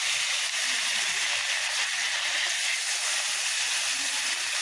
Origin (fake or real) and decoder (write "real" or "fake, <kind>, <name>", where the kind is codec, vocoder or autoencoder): real